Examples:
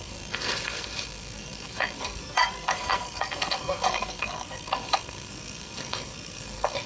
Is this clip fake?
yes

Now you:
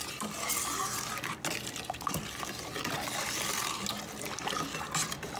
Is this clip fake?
no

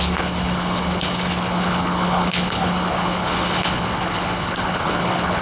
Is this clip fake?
yes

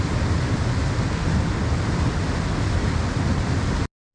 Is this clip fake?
no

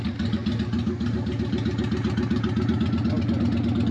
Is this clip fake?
no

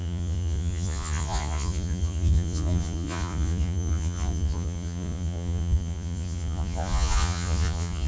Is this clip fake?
yes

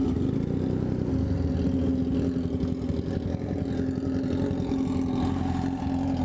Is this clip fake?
no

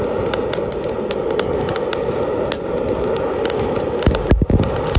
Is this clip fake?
no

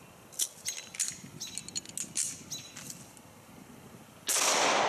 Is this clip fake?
no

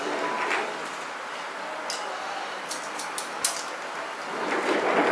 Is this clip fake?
no